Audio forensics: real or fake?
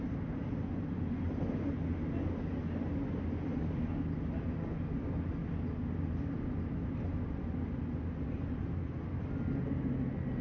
real